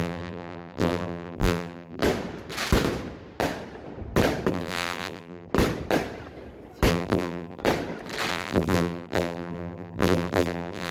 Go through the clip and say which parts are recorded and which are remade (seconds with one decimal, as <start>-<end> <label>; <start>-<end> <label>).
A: 0.0-2.0 remade; 2.0-4.5 recorded; 4.5-5.5 remade; 5.5-6.9 recorded; 6.9-7.6 remade; 7.6-8.3 recorded; 8.3-10.9 remade